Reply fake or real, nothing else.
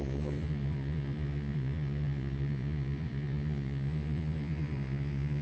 fake